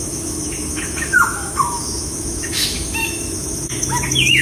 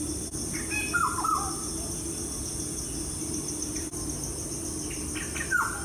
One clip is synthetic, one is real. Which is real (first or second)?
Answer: second